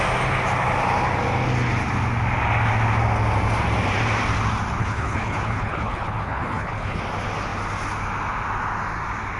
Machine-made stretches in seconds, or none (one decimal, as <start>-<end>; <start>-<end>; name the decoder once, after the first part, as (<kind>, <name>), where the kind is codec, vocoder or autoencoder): 4.8-7.0 (codec, HILCodec)